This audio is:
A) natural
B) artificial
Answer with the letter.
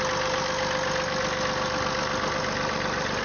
A